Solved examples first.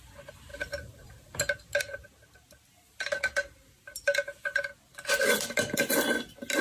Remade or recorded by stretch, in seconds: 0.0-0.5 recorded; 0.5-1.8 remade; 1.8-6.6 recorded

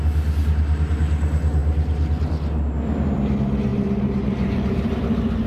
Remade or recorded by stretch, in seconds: 0.0-3.7 recorded; 3.7-5.0 remade; 5.0-5.5 recorded

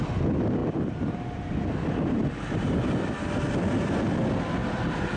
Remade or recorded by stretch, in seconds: 0.0-2.2 recorded; 2.2-3.3 remade; 3.3-5.2 recorded